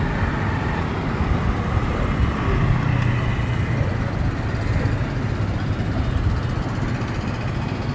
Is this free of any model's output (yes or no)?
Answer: yes